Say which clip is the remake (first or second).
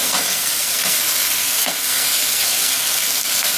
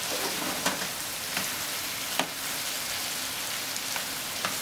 first